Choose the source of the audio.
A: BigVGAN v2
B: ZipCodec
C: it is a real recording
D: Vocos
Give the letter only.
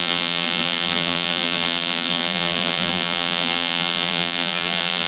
A